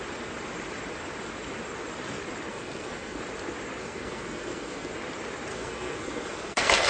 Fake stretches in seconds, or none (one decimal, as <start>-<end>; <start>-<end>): 2.5-3.2; 3.8-4.9; 5.5-6.9